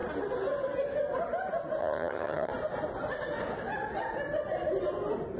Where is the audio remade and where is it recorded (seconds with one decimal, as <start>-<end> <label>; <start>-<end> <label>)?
0.0-1.8 recorded; 1.8-2.5 remade; 2.5-5.4 recorded